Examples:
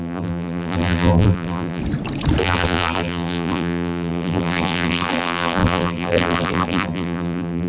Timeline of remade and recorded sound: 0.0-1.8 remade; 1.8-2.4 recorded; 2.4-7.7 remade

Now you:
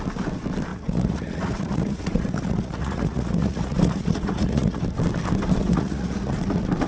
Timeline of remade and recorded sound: 0.0-0.7 recorded; 0.7-4.8 remade; 4.8-5.6 recorded; 5.6-6.3 remade; 6.3-6.9 recorded

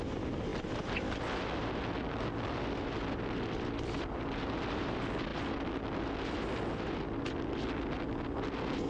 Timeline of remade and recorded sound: 0.0-8.9 recorded